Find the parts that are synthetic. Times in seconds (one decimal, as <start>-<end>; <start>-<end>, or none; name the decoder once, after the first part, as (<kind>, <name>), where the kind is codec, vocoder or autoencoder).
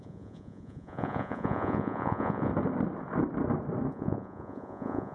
0.0-2.5 (vocoder, Vocos); 3.9-5.1